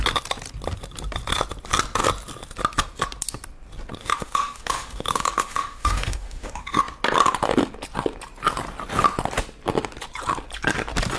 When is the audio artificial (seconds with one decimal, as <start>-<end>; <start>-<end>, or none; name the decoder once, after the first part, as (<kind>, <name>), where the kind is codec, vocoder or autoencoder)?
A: 4.0-6.8 (autoencoder, DAC-VAE)